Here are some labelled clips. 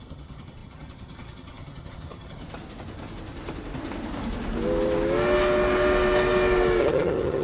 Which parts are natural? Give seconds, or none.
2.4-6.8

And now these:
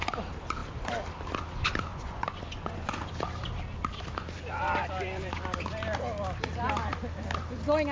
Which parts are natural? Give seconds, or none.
0.0-1.9; 3.1-7.9

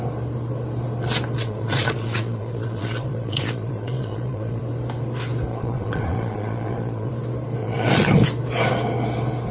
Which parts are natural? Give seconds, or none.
0.0-1.4; 4.6-5.5; 7.1-7.6; 8.2-9.5

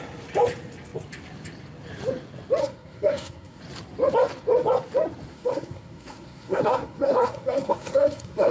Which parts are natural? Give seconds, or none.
0.0-2.6; 3.6-5.3